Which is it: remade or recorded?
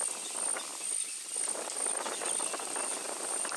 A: recorded